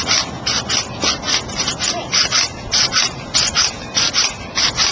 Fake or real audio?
real